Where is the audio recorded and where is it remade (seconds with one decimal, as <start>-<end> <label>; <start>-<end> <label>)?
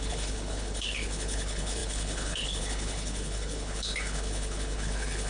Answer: 0.0-5.3 remade